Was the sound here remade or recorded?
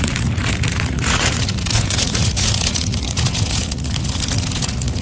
remade